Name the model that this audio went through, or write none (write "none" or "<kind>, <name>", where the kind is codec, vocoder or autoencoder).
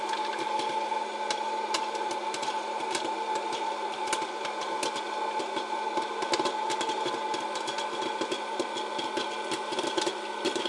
none